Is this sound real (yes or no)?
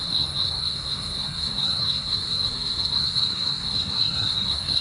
no